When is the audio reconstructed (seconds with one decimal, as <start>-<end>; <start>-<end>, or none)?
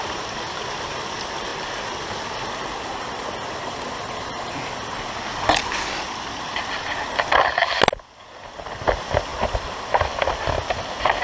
9.3-10.1